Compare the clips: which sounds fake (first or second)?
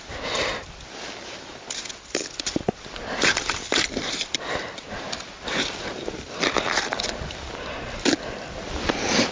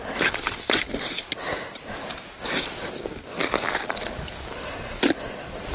first